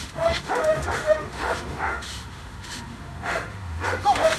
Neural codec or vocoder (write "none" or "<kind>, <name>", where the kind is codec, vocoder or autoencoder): autoencoder, DAC-VAE